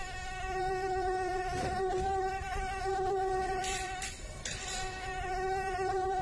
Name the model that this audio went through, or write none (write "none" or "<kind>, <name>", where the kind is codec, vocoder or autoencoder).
vocoder, BigVGAN v2